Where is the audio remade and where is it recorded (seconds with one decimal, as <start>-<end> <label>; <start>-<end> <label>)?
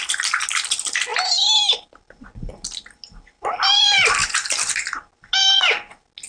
0.0-6.3 recorded